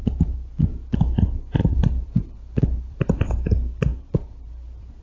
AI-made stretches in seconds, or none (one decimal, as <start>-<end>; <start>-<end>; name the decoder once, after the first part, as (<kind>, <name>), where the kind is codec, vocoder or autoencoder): 0.0-0.5 (vocoder, BigVGAN v2); 1.6-3.3; 3.9-4.5